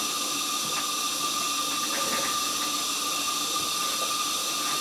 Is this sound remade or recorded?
recorded